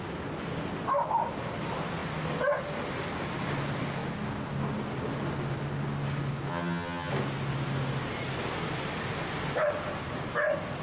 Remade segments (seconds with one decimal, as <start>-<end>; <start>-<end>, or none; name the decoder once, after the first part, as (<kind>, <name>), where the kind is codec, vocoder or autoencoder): 6.5-7.1 (vocoder, HiFi-GAN)